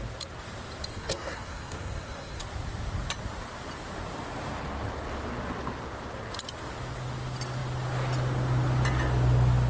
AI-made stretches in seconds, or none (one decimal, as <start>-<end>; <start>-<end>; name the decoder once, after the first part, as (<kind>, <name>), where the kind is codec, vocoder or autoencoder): 0.9-2.4 (codec, SNAC)